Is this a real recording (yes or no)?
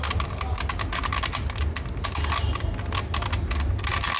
yes